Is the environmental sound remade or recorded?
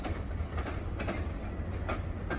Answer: recorded